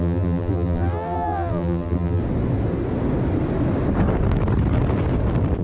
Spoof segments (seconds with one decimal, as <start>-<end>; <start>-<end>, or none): 0.0-2.2